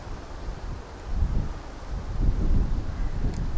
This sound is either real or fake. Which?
fake